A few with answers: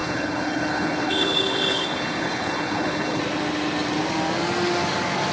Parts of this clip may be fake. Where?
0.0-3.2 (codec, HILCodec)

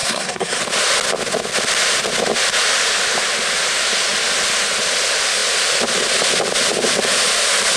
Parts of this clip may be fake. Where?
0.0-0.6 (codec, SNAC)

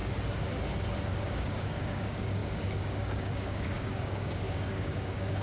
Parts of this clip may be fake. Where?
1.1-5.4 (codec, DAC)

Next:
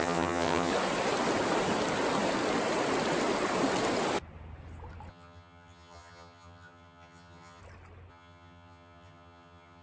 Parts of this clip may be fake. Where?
0.0-0.7 (vocoder, HiFi-GAN); 5.1-7.6; 8.1-9.8